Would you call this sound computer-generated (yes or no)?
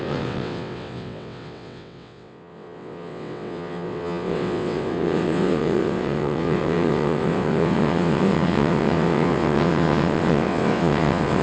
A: yes